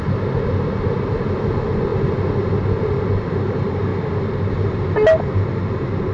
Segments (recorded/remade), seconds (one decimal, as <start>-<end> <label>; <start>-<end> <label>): 0.0-6.1 recorded